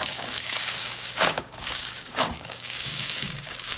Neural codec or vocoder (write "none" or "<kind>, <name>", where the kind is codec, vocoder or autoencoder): codec, DAC